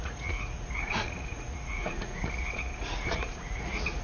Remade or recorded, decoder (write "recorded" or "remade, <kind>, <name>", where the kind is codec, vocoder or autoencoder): remade, vocoder, Vocos